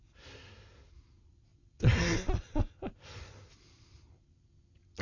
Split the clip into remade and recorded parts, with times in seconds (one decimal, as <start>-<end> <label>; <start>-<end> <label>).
0.0-5.0 recorded

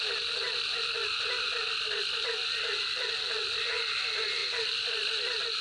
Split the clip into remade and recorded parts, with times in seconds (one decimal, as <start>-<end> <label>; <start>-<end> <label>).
0.0-5.6 recorded

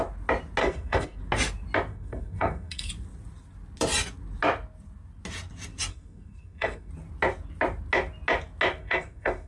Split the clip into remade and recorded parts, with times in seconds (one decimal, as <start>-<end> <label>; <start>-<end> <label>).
0.0-0.6 recorded; 0.6-1.2 remade; 1.2-1.9 recorded; 1.9-2.9 remade; 2.9-5.9 recorded; 5.9-6.9 remade; 6.9-8.8 recorded; 8.8-9.5 remade

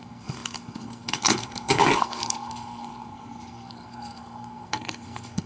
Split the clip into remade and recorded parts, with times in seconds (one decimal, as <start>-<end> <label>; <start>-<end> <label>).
0.0-5.5 remade

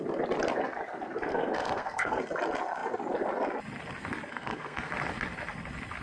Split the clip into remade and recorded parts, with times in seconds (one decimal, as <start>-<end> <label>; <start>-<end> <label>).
0.0-1.3 recorded; 1.3-2.2 remade; 2.2-4.3 recorded; 4.3-4.9 remade; 4.9-6.0 recorded

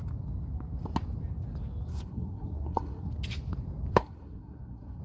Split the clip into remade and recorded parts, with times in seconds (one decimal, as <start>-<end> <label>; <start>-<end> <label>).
0.0-1.9 recorded; 1.9-3.1 remade; 3.1-4.0 recorded; 4.0-5.0 remade